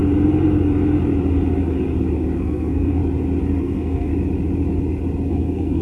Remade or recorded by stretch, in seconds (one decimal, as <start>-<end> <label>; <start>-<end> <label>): 0.0-2.4 recorded; 2.4-3.0 remade; 3.0-3.6 recorded; 3.6-4.1 remade; 4.1-5.3 recorded; 5.3-5.8 remade